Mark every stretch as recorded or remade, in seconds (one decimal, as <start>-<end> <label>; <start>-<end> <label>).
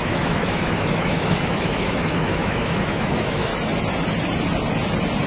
0.0-3.5 remade; 3.5-5.3 recorded